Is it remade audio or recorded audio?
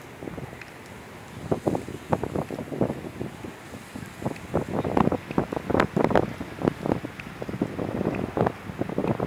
recorded